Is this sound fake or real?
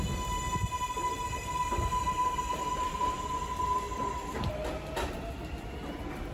real